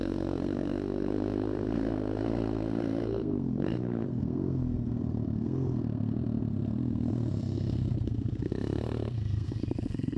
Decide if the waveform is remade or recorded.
remade